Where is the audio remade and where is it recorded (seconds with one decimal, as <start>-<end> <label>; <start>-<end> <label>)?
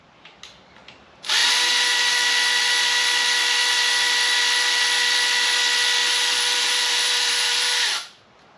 0.0-1.4 recorded; 1.4-2.1 remade; 2.1-6.0 recorded; 6.0-8.6 remade